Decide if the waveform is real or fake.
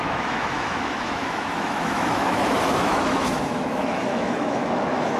fake